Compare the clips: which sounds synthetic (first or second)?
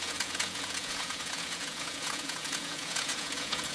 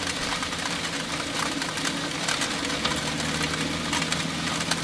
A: first